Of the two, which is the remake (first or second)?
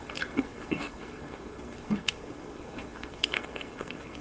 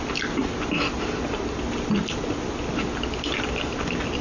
first